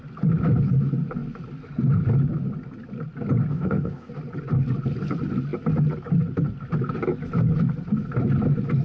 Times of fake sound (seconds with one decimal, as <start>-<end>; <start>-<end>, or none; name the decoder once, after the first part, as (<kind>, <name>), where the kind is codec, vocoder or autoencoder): 3.5-4.1 (codec, ZipCodec)